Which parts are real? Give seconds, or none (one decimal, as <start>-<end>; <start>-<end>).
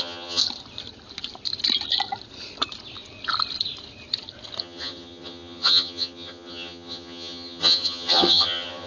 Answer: 0.4-4.6